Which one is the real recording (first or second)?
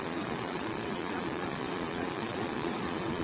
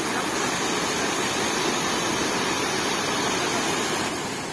second